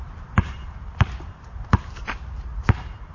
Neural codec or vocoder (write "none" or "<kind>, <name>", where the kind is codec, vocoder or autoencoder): vocoder, BigVGAN v2